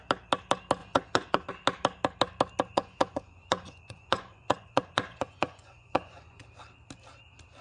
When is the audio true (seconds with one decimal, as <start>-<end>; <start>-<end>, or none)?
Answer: 0.0-0.8; 1.5-2.7; 6.4-7.6